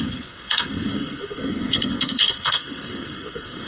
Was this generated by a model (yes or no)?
yes